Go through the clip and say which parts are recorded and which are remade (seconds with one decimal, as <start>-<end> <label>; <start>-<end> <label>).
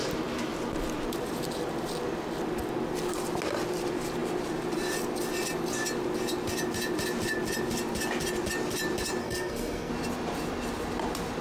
0.0-9.2 recorded; 9.2-9.9 remade; 9.9-11.4 recorded